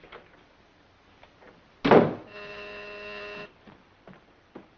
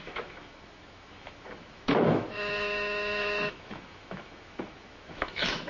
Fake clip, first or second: second